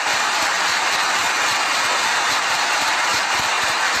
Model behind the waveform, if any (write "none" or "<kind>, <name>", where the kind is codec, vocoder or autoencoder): vocoder, BigVGAN v2